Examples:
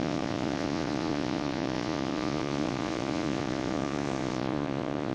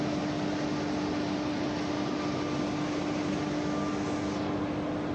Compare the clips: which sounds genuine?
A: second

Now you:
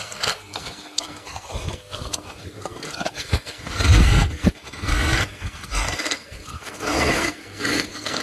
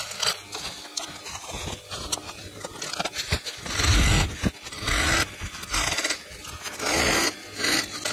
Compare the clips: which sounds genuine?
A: second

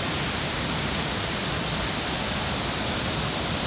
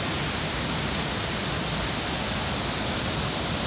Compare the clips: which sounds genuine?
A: second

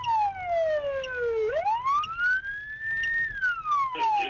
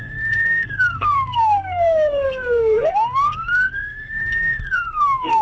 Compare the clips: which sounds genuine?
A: first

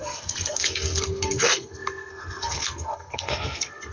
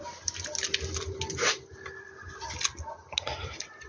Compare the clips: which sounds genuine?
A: second